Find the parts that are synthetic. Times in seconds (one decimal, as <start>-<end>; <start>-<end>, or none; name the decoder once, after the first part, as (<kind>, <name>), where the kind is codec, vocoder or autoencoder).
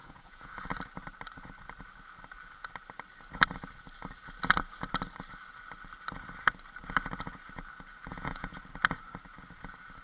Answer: 0.0-0.5 (vocoder, Vocos); 8.1-8.6